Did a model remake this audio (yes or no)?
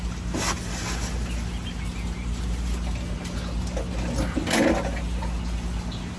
no